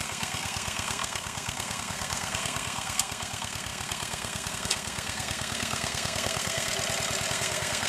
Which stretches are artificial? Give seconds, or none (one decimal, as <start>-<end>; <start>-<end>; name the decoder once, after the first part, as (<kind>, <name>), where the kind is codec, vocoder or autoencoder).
0.0-6.7 (codec, SNAC); 7.3-7.9